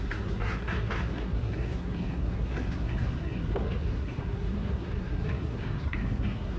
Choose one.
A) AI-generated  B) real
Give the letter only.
A